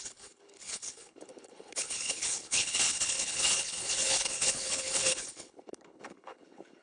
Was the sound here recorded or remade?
remade